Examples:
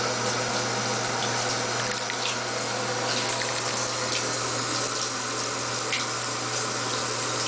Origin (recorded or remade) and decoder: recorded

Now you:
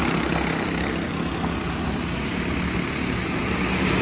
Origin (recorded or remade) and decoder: recorded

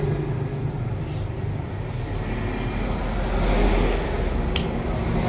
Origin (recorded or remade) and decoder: recorded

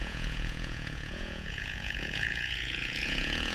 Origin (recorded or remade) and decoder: remade, vocoder, Vocos